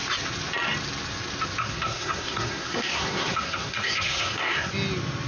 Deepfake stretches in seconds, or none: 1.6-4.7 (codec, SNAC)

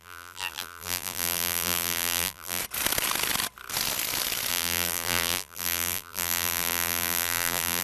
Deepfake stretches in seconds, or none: 0.0-2.6 (vocoder, BigVGAN v2); 4.5-7.8

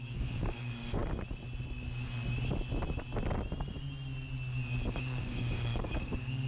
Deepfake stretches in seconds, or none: 0.0-1.0 (codec, DAC); 4.9-6.5

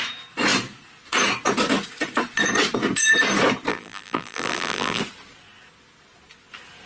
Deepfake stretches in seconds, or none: 3.7-5.0 (vocoder, BigVGAN v2)

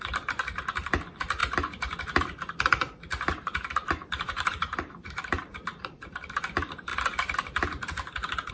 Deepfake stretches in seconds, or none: 3.1-6.0 (vocoder, BigVGAN v2)